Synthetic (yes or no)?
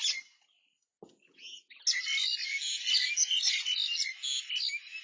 no